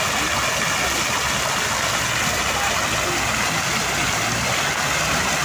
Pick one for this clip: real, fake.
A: real